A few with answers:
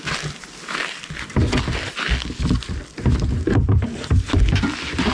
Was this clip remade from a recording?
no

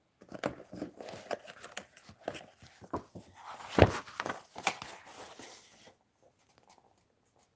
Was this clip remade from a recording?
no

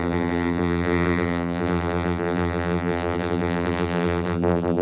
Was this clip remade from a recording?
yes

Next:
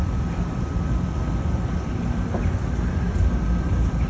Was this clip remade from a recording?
yes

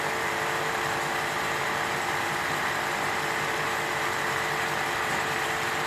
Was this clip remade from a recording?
yes